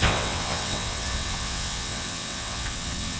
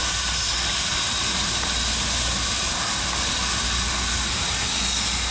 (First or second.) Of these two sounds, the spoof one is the first